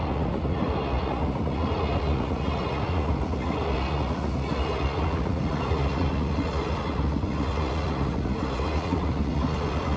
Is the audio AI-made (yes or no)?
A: yes